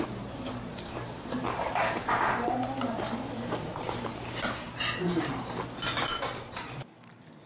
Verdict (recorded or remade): remade